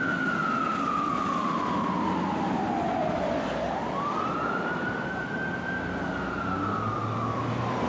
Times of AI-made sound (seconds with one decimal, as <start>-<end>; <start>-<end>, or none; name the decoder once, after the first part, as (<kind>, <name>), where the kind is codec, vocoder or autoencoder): 0.7-1.6 (vocoder, BigVGAN v2); 3.0-5.3